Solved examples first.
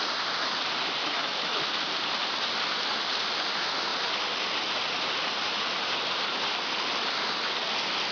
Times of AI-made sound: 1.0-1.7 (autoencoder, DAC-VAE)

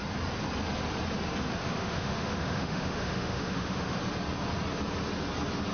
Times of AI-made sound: 1.6-4.0 (autoencoder, DAC-VAE)

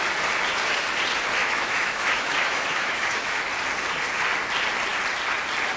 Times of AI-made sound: 1.4-3.4 (autoencoder, DAC-VAE)

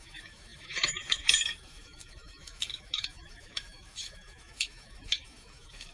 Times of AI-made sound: 0.0-5.9 (autoencoder, DAC-VAE)